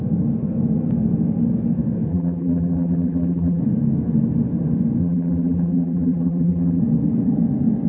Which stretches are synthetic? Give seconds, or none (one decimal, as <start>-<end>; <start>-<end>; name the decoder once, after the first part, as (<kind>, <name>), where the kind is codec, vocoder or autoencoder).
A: 2.1-3.6 (vocoder, BigVGAN v2); 5.0-6.8